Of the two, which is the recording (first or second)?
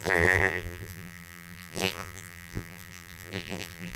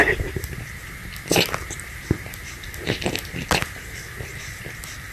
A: second